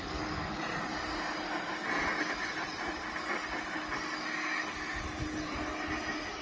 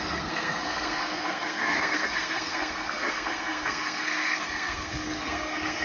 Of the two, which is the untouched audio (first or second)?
first